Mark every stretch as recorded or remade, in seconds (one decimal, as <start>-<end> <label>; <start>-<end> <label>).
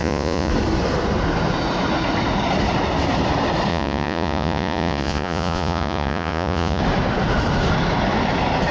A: 0.0-0.5 remade; 0.5-3.7 recorded; 3.7-6.8 remade; 6.8-8.7 recorded